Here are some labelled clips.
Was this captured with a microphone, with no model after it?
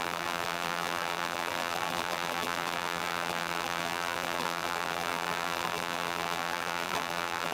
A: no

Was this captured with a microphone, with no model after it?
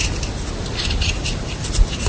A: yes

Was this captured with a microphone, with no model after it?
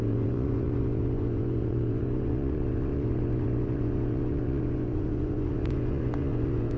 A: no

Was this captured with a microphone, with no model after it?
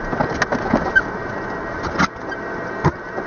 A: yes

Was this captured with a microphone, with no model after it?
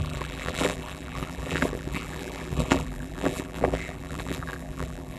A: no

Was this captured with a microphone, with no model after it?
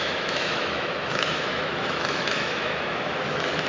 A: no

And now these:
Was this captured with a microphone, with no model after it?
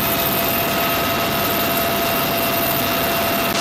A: yes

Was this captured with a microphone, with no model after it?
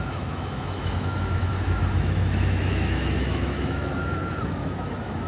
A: no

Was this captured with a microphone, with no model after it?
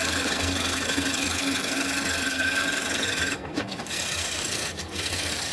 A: no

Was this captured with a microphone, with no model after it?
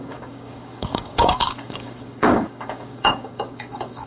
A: no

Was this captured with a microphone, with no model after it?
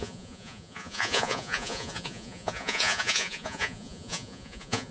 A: no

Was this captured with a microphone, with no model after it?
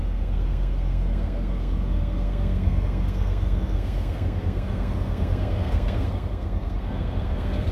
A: no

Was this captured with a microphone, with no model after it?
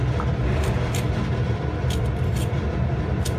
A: yes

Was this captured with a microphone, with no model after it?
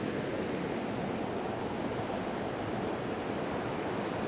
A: yes